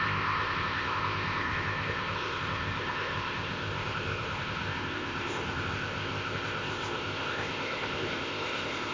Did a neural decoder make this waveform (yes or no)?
yes